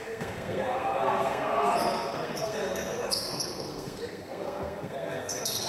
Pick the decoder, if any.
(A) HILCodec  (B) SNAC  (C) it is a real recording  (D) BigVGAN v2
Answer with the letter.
B